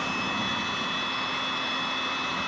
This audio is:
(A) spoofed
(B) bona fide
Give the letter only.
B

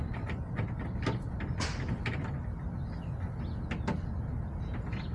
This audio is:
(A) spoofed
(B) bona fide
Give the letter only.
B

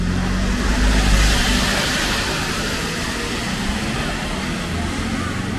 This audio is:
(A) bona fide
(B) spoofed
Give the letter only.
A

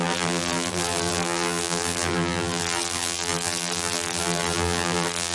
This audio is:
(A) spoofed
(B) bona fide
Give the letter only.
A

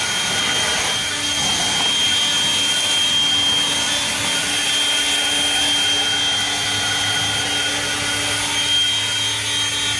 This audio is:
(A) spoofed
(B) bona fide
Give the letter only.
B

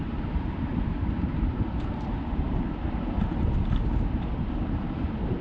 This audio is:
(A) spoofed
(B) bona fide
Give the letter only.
A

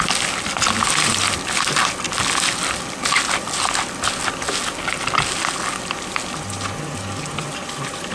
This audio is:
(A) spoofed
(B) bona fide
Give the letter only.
B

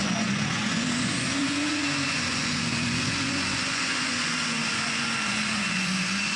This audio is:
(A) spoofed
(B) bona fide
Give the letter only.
A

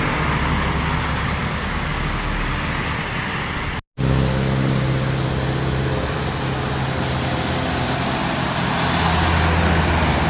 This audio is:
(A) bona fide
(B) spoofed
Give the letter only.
A